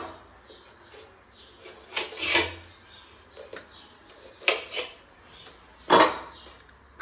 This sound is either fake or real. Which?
real